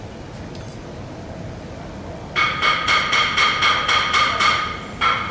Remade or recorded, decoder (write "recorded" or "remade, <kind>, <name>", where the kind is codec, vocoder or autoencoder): recorded